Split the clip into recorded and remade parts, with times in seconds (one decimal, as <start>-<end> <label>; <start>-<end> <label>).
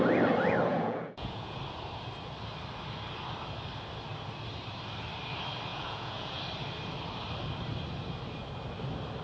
0.0-0.7 recorded; 0.7-1.6 remade; 1.6-5.7 recorded; 5.7-6.4 remade; 6.4-9.2 recorded